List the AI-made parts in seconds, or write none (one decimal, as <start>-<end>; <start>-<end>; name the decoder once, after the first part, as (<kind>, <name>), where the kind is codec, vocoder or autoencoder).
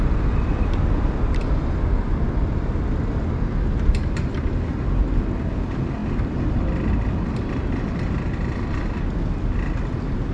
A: none